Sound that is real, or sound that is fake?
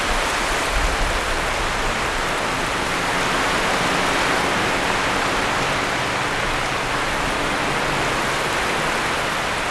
real